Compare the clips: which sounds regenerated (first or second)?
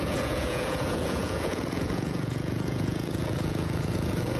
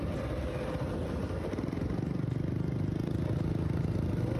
first